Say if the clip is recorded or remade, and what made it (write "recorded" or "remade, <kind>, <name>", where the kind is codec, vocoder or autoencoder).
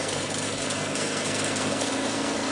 remade, codec, SNAC